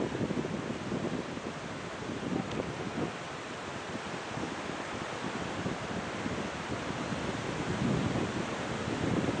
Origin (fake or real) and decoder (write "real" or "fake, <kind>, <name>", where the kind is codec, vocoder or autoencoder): real